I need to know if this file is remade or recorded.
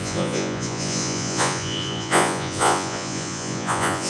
remade